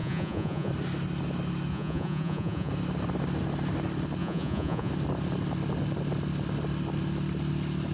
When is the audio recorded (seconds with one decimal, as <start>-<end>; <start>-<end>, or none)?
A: 0.7-1.7; 2.7-4.2; 4.9-7.9